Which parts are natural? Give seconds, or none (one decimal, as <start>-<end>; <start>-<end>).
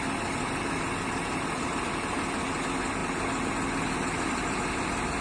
0.0-5.2